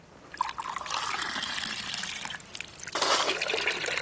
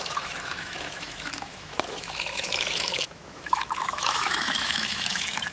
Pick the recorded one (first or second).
first